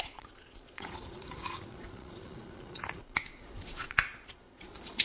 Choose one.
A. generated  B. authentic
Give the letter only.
A